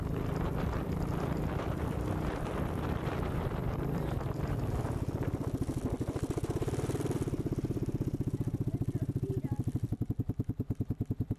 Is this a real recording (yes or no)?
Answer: no